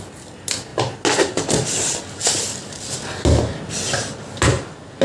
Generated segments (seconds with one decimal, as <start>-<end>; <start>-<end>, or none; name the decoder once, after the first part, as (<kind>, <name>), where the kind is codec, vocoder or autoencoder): none